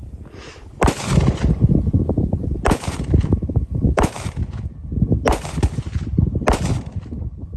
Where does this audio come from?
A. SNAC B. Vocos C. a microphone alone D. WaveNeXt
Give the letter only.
C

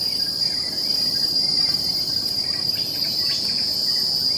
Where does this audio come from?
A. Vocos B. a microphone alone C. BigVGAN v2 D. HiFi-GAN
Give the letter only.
B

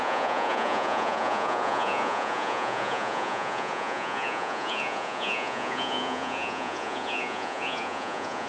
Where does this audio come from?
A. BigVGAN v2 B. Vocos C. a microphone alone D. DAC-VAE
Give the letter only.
B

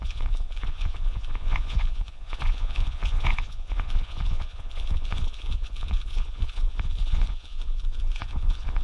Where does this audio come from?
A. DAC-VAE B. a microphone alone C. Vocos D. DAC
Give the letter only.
C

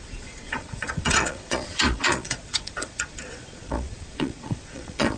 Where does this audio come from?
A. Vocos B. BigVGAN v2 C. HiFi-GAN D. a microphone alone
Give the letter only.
A